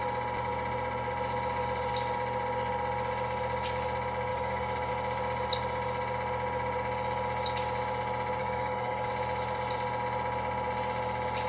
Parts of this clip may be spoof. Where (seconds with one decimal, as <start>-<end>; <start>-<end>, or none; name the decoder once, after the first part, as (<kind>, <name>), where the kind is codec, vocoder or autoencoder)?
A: 4.3-4.9 (codec, DAC); 8.4-9.1